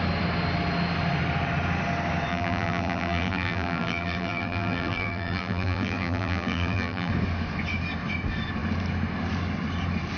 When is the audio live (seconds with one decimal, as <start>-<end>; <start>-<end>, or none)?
0.0-2.3; 7.1-10.2